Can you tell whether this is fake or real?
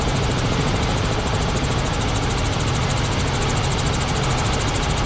real